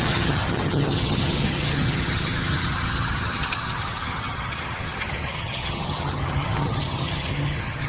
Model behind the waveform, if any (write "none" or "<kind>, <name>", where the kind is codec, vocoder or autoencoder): vocoder, HiFi-GAN